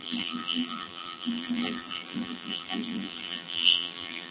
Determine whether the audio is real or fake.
fake